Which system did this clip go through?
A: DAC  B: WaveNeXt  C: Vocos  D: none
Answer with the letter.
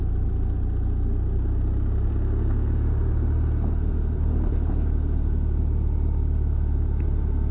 D